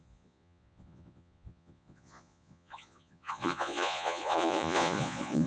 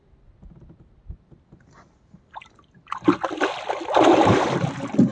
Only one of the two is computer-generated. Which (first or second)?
first